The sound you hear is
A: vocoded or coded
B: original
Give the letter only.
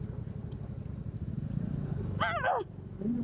B